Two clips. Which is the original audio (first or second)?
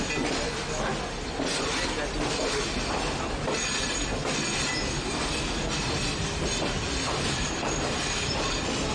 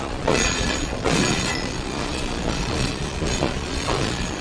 first